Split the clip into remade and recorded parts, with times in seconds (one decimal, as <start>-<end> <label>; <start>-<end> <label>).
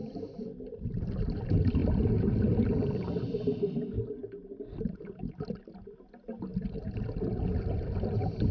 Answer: 0.0-8.5 recorded